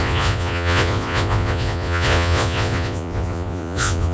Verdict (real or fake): fake